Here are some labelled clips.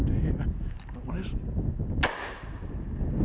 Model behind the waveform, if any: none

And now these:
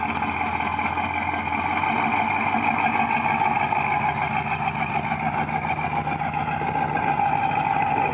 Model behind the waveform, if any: none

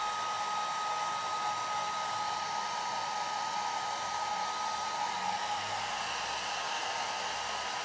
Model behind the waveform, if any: none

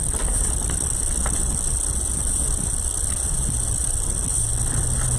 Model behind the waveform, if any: none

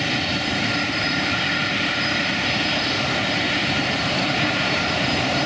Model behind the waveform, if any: vocoder, BigVGAN v2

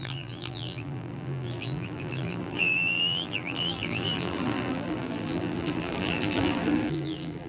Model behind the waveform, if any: vocoder, BigVGAN v2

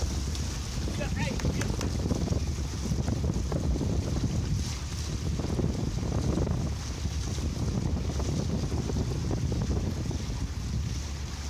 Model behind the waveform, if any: none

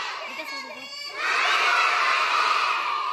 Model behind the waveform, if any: vocoder, BigVGAN v2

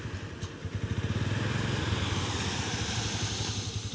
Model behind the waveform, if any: none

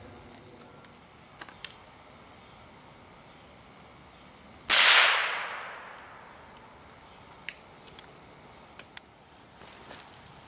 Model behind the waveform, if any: none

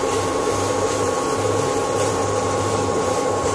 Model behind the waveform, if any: vocoder, BigVGAN v2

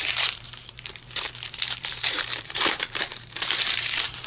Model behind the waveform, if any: vocoder, BigVGAN v2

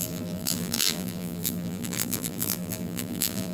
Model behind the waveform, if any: vocoder, BigVGAN v2